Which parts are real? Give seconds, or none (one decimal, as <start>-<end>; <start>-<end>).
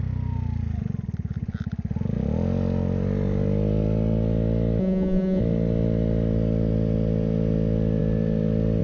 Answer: 0.0-4.8; 5.4-8.8